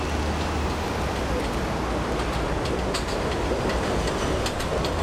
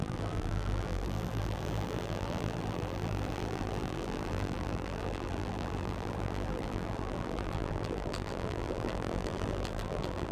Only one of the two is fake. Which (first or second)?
second